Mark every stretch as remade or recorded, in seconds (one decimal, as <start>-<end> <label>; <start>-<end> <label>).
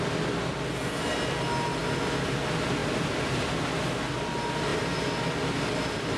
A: 0.0-1.8 recorded; 1.8-2.4 remade; 2.4-2.8 recorded; 2.8-3.8 remade; 3.8-4.7 recorded; 4.7-6.2 remade